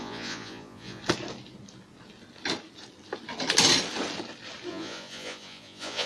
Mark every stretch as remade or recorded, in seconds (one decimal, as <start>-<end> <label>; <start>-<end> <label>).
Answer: 0.0-1.0 remade; 1.0-4.7 recorded; 4.7-6.1 remade